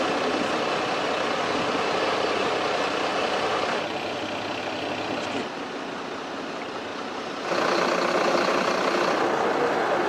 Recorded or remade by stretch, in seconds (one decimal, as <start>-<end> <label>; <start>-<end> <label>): 0.0-6.9 recorded; 6.9-8.1 remade; 8.1-10.1 recorded